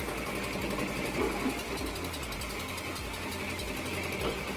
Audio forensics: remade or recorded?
recorded